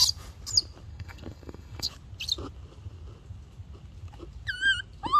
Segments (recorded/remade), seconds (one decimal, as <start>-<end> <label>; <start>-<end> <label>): 0.0-0.9 recorded; 0.9-1.9 remade; 1.9-5.2 recorded